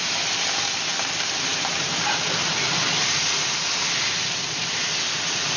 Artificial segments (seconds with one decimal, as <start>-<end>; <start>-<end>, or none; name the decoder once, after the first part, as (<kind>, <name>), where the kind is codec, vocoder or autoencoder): none